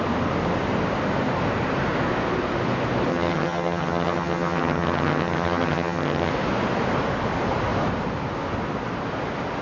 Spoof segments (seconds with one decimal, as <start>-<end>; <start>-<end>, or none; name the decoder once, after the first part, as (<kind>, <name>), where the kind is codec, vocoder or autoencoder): 3.1-6.3 (vocoder, HiFi-GAN)